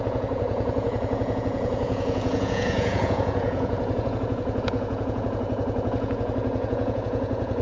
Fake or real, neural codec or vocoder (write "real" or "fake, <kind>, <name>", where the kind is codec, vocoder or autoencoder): fake, vocoder, Vocos